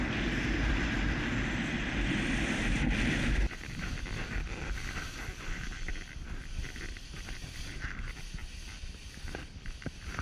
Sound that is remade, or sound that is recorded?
recorded